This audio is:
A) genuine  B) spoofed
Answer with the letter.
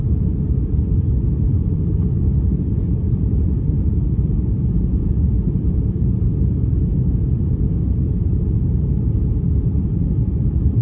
B